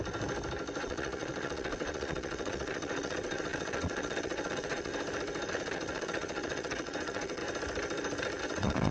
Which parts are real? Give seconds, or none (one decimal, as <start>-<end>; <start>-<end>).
0.0-0.8; 4.9-5.5; 7.4-8.4